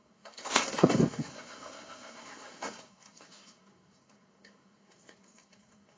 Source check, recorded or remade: remade